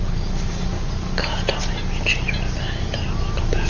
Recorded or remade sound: recorded